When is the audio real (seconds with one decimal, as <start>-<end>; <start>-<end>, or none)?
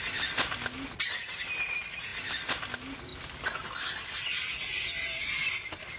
0.0-6.0